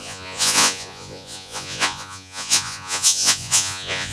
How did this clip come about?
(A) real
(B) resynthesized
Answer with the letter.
B